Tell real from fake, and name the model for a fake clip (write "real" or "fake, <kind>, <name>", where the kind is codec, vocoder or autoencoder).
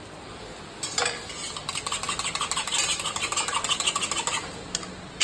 real